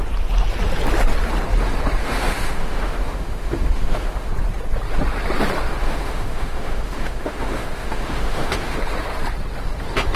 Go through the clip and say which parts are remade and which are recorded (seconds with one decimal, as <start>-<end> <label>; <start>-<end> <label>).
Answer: 0.0-2.0 recorded; 2.0-4.3 remade; 4.3-5.7 recorded; 5.7-8.8 remade; 8.8-10.2 recorded